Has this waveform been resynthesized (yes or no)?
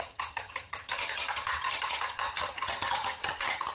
yes